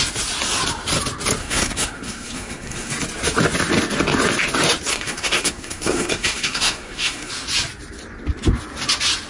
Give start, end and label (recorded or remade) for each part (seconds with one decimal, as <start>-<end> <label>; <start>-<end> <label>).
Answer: 0.0-1.4 recorded; 1.4-2.9 remade; 2.9-4.9 recorded; 4.9-7.3 remade; 7.3-9.3 recorded